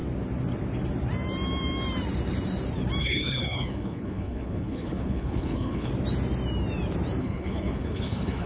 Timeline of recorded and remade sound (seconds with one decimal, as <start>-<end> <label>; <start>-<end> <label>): 0.0-3.0 recorded; 3.0-5.9 remade; 5.9-7.2 recorded; 7.2-8.5 remade